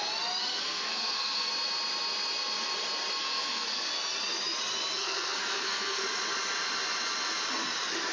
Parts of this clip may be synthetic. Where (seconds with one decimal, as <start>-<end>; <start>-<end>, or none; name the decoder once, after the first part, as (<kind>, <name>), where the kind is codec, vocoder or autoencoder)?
0.4-1.5 (codec, SNAC); 3.2-3.9; 5.0-6.0